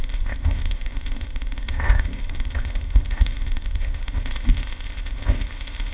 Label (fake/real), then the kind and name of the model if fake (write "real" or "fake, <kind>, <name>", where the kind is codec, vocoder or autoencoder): fake, codec, ZipCodec